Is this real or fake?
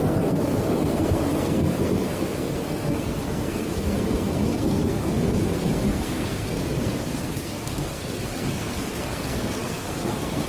fake